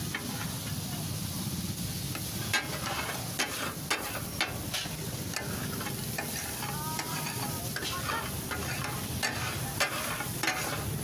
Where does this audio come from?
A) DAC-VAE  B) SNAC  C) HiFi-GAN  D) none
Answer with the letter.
D